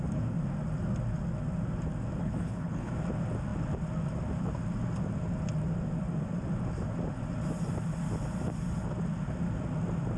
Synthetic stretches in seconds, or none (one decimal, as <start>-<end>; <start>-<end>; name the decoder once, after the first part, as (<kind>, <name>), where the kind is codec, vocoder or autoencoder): 2.2-2.9 (codec, HILCodec)